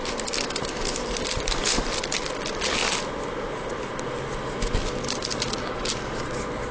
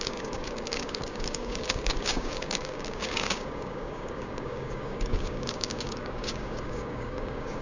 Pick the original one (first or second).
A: first